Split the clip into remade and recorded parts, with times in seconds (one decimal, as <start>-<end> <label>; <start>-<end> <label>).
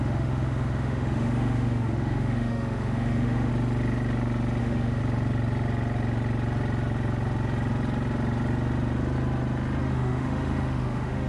0.0-3.5 remade; 3.5-4.6 recorded; 4.6-5.0 remade; 5.0-9.8 recorded; 9.8-11.3 remade